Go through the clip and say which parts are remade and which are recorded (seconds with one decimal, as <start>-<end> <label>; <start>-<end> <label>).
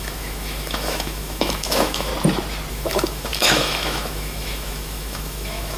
0.0-2.1 remade; 2.1-2.7 recorded; 2.7-5.8 remade